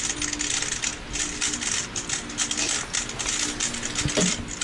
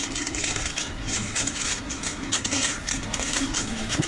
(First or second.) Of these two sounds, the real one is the first